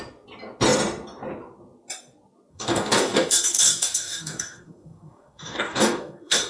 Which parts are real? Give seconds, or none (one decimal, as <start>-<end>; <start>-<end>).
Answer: 0.0-2.5